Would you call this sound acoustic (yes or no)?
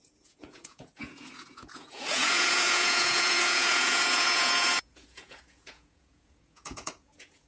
no